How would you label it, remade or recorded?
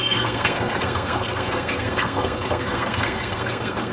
remade